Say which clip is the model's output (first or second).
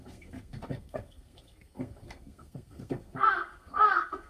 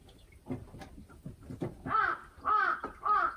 first